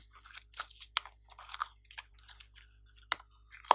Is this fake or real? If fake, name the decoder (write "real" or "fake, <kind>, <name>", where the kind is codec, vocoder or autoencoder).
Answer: real